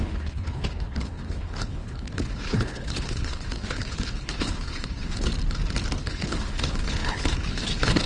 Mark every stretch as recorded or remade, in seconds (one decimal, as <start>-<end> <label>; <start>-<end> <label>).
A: 0.0-5.3 remade; 5.3-6.0 recorded; 6.0-8.1 remade